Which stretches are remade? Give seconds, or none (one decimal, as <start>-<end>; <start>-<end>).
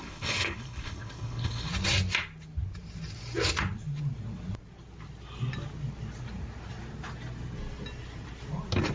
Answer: 0.0-1.7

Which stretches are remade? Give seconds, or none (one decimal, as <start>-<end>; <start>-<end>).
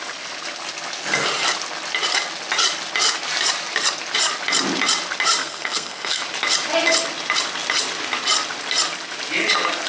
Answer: 5.4-6.2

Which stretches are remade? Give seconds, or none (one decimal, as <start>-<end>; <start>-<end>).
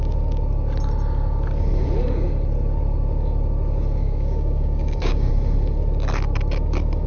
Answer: 4.0-5.3